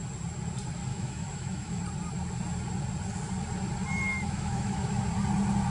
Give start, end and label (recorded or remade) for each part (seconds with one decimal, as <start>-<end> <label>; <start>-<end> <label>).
0.0-0.9 recorded; 0.9-1.8 remade; 1.8-4.1 recorded; 4.1-5.0 remade; 5.0-5.7 recorded